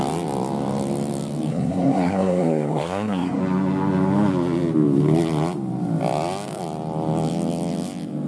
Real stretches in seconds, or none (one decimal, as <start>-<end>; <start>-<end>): 0.0-1.5; 3.4-8.3